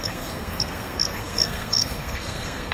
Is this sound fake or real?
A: fake